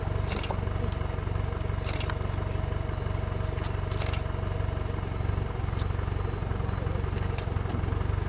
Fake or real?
real